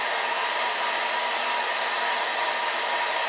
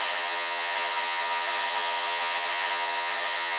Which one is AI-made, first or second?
second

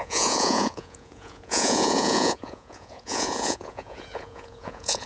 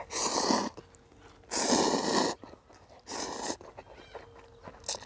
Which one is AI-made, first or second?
first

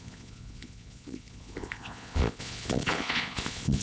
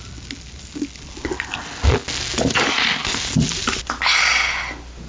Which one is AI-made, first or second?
first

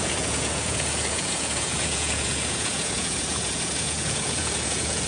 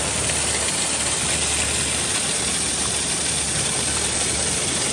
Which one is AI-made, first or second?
first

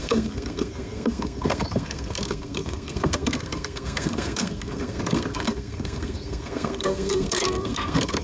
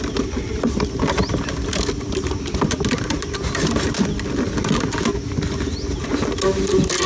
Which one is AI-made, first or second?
first